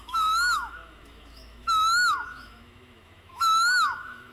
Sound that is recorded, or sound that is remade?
remade